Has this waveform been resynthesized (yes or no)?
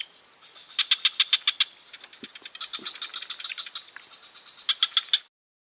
no